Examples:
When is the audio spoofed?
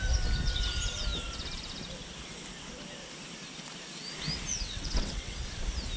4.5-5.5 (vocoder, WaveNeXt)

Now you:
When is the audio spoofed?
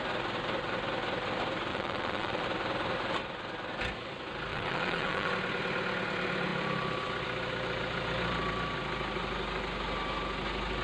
1.7-2.4 (vocoder, WaveNeXt); 4.5-5.3